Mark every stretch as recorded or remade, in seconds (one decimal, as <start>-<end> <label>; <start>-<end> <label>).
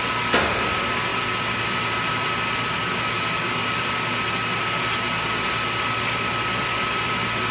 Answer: 0.0-7.5 recorded